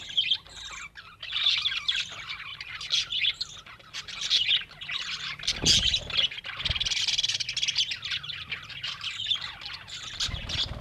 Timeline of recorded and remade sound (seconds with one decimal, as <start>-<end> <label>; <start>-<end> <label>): 0.0-10.8 recorded